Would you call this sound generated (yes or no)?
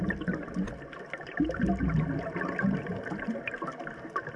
no